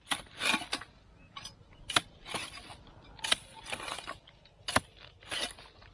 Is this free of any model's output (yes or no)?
yes